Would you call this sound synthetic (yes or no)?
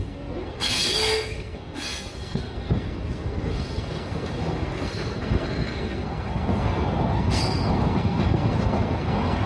yes